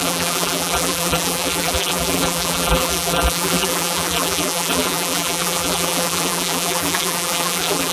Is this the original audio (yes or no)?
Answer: no